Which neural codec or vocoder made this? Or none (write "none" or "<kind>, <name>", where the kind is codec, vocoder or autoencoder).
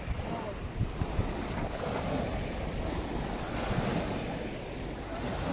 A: none